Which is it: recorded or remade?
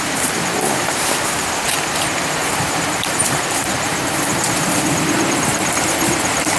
remade